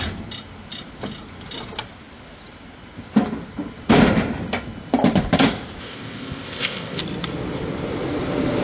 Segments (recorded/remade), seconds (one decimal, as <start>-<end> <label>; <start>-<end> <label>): 0.0-5.8 recorded; 5.8-7.0 remade; 7.0-8.6 recorded